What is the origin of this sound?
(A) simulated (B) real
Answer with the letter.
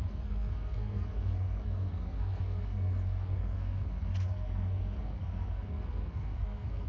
A